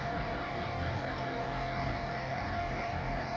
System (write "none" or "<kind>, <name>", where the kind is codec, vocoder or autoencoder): codec, DAC